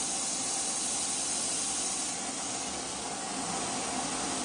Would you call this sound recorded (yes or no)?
yes